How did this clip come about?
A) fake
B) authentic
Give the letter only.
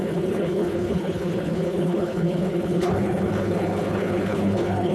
A